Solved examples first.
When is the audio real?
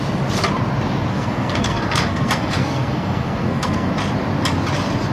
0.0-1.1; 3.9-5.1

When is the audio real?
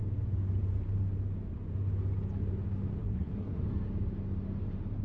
0.0-3.0; 3.6-5.0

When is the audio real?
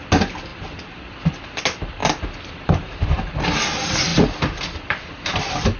0.0-5.8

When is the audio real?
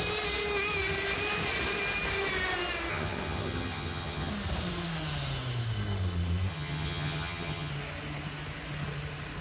0.0-2.9; 4.3-6.5; 7.7-9.4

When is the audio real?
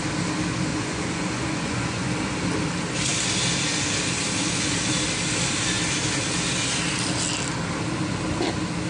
0.0-0.7; 2.1-8.9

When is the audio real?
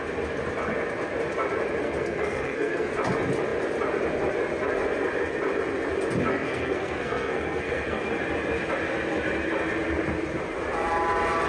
0.0-1.8; 2.9-6.3; 8.0-11.5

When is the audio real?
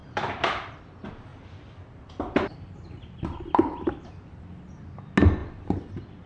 0.8-1.3; 3.9-5.4